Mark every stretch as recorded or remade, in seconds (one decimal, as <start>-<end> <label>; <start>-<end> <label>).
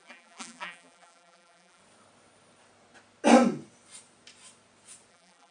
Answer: 0.0-1.8 remade; 1.8-5.1 recorded; 5.1-5.5 remade